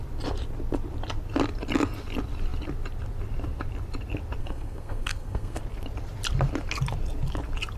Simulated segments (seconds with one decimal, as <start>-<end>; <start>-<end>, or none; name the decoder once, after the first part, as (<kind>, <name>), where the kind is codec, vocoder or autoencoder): 4.4-5.6 (codec, SNAC)